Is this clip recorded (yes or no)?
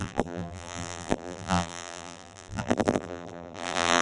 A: no